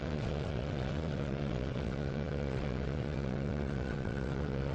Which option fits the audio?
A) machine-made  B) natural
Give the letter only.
A